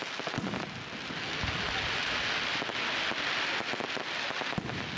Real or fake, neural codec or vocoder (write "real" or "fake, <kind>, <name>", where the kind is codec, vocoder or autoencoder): real